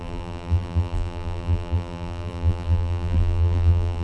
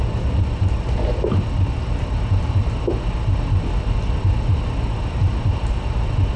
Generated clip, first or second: first